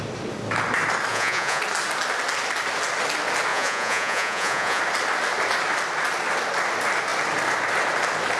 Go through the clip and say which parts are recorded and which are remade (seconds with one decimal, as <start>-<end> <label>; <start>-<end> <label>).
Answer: 0.0-1.1 recorded; 1.1-1.6 remade; 1.6-3.5 recorded; 3.5-4.8 remade; 4.8-8.4 recorded